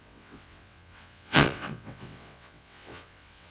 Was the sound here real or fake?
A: fake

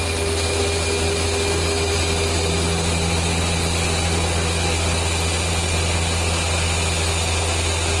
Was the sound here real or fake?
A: real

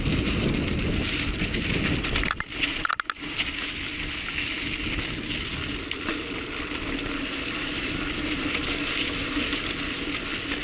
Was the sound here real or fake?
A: real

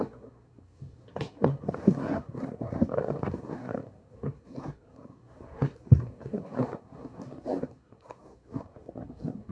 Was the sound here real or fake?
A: fake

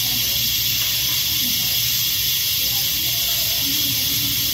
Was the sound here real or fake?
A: real